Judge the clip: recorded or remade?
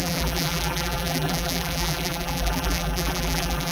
remade